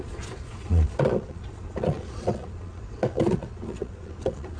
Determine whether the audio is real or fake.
fake